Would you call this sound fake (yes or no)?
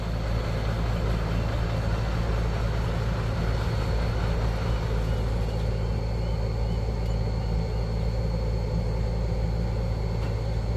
no